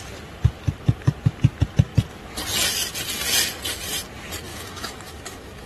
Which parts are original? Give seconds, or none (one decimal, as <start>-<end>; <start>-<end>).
0.0-4.5